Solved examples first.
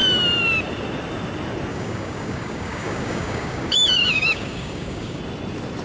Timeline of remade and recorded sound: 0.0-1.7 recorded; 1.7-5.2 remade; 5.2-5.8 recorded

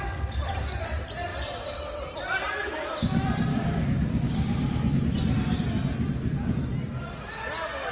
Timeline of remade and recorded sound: 0.0-3.5 recorded; 3.5-5.0 remade; 5.0-7.9 recorded

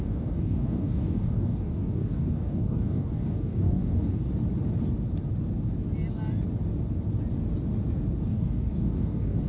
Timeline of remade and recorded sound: 0.0-4.3 remade; 4.3-8.3 recorded; 8.3-9.5 remade